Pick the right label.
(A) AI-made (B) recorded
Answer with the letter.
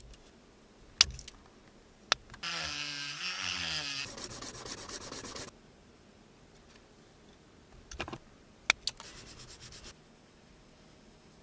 B